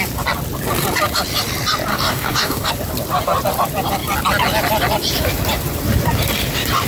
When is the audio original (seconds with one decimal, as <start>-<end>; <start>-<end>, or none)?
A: 0.0-1.9; 2.7-6.9